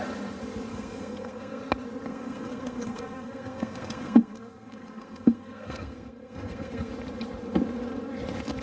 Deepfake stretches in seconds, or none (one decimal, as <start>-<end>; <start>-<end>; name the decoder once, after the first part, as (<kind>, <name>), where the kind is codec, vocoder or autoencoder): 0.7-1.6 (codec, SNAC); 2.1-6.9